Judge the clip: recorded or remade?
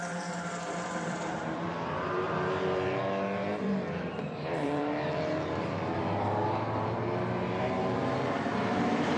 remade